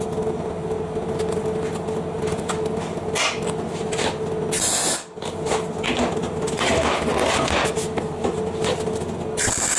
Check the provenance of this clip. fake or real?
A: real